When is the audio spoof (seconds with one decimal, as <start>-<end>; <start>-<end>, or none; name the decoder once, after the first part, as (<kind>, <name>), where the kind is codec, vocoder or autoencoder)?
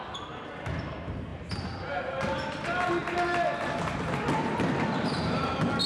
none